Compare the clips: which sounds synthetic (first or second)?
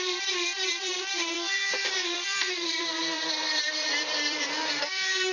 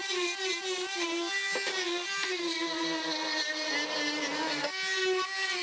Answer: first